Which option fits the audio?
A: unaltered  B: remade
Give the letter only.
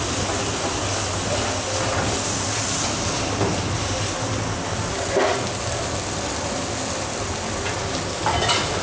A